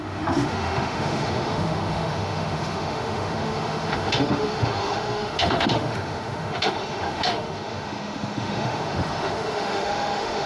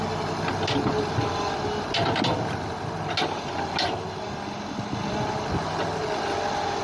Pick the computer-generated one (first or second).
first